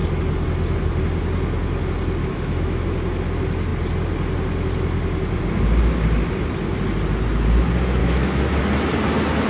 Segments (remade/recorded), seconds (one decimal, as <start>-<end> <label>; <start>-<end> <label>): 0.0-2.2 recorded; 2.2-2.8 remade; 2.8-8.0 recorded; 8.0-8.6 remade; 8.6-9.5 recorded